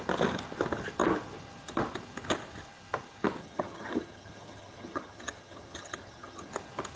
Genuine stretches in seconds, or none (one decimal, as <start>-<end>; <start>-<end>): 0.0-3.4; 6.5-7.0